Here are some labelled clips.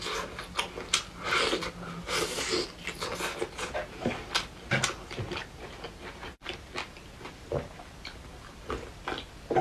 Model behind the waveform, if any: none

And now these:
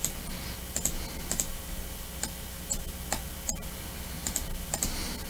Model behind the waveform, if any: none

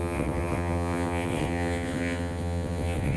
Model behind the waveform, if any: vocoder, WaveNeXt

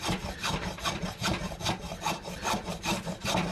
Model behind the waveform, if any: vocoder, BigVGAN v2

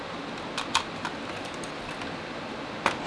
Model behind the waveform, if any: none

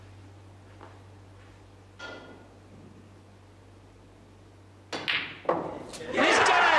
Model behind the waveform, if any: none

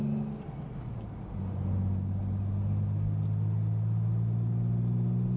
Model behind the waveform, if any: none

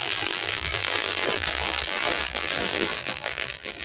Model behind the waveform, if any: vocoder, BigVGAN v2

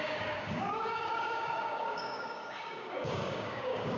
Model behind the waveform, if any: codec, DAC